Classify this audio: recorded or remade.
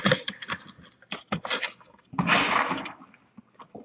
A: recorded